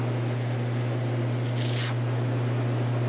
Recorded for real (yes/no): yes